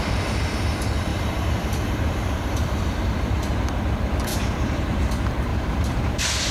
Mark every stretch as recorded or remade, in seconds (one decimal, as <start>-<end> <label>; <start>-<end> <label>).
0.0-1.1 recorded; 1.1-3.1 remade; 3.1-4.3 recorded; 4.3-5.1 remade; 5.1-5.5 recorded; 5.5-6.0 remade; 6.0-6.5 recorded